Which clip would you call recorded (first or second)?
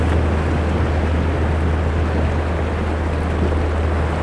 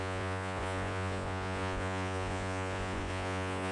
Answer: first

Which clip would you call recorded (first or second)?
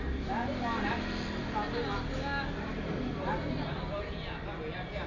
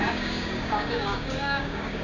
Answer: first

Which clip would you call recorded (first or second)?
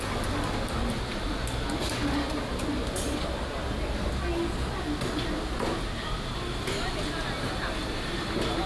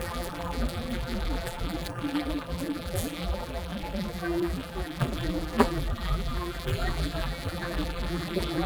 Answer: first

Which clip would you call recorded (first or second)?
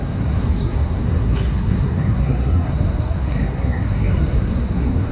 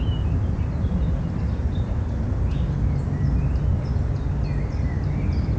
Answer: second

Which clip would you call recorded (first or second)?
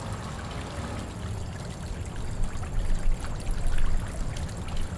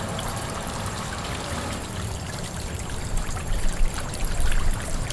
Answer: first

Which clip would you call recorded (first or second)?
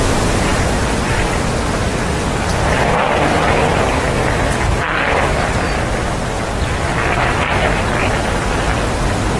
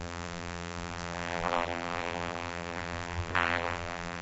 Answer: first